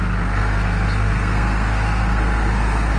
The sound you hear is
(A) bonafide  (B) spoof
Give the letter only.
B